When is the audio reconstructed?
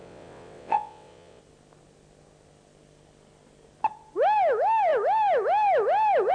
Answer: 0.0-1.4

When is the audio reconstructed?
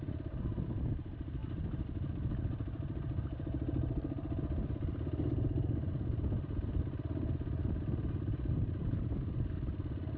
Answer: none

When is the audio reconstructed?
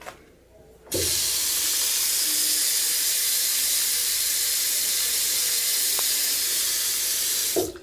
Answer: 4.0-4.9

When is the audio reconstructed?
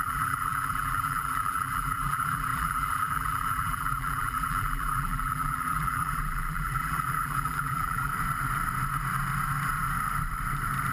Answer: 0.0-8.1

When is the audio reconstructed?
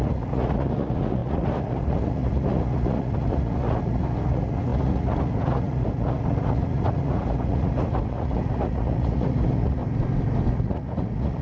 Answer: 0.0-9.8; 10.5-11.4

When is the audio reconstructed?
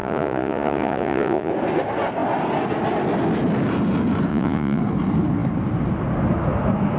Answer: 0.0-1.5; 4.3-4.8